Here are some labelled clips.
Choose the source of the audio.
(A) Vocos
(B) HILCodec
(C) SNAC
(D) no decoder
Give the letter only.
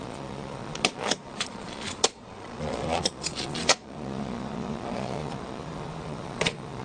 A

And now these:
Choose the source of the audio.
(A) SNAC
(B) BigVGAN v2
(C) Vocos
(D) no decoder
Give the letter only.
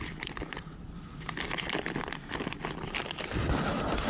D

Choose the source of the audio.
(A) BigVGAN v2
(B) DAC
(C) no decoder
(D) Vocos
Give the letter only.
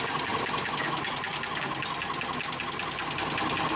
C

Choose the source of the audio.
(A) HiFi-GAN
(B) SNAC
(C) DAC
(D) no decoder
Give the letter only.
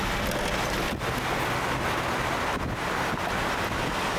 D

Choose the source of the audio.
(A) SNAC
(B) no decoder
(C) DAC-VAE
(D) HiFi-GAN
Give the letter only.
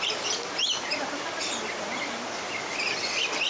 B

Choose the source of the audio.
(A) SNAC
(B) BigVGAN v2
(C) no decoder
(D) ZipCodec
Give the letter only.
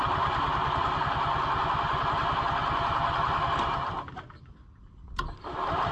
C